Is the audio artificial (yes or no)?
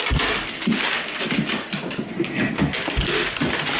no